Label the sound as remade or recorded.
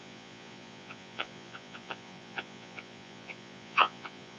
remade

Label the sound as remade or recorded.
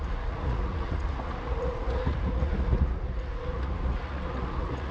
remade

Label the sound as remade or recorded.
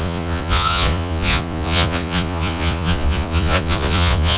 remade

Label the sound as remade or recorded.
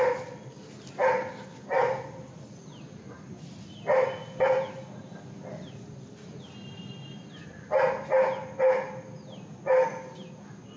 recorded